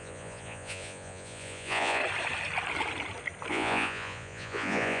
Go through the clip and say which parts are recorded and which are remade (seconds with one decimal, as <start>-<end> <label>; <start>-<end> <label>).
0.0-2.0 remade; 2.0-3.5 recorded; 3.5-5.0 remade